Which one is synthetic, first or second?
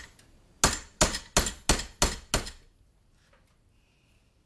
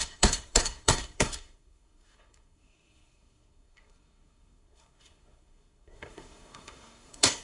second